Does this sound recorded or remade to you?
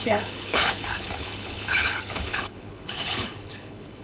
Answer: remade